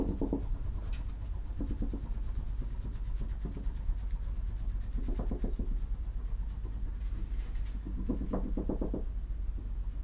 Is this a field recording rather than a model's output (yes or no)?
yes